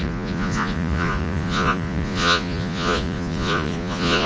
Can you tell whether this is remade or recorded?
remade